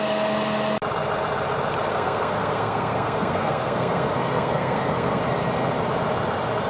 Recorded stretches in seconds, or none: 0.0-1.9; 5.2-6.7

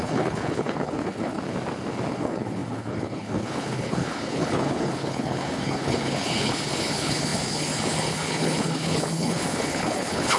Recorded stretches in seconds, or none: 1.4-2.1

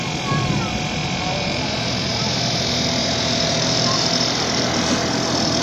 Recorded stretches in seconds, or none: 0.0-1.0; 4.4-5.6

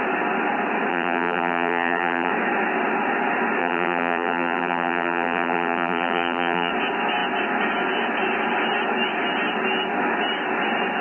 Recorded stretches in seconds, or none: 0.0-0.9; 2.3-3.6; 6.7-11.0